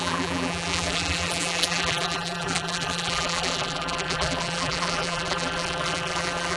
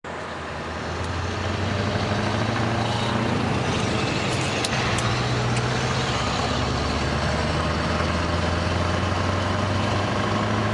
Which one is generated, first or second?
first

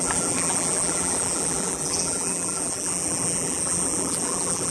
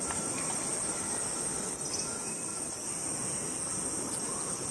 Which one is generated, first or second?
first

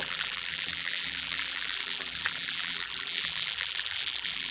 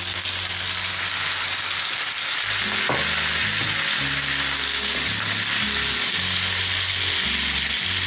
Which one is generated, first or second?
first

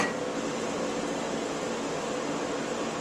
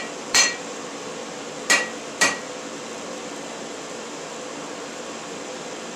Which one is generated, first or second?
second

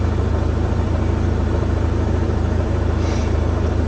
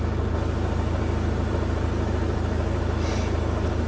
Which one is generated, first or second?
first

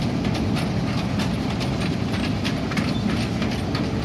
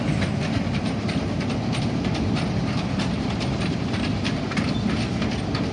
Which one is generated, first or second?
second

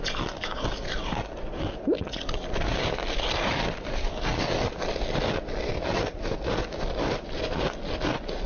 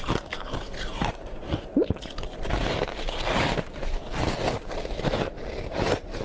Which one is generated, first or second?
second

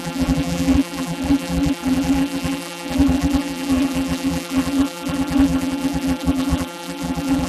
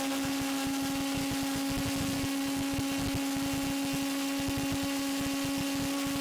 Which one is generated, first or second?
first